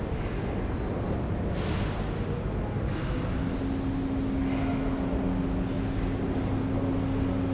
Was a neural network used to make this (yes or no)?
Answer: no